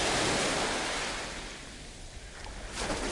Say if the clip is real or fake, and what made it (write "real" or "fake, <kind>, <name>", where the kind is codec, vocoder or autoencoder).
real